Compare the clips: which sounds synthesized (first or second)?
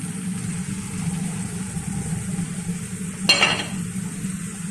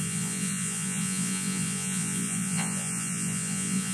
second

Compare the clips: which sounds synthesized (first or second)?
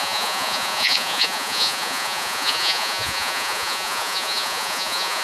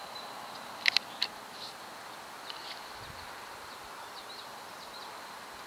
first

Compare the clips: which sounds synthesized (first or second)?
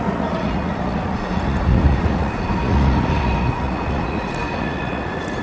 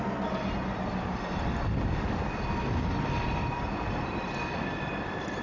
first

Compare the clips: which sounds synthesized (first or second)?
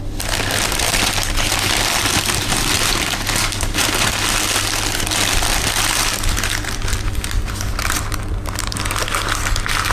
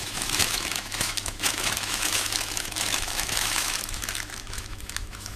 second